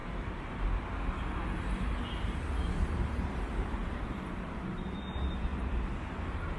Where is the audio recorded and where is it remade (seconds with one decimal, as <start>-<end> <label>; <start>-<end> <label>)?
0.0-2.6 recorded; 2.6-5.5 remade; 5.5-6.6 recorded